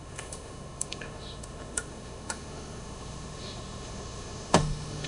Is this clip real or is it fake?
fake